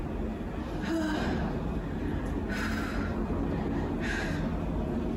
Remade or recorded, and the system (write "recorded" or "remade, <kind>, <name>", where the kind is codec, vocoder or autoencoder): recorded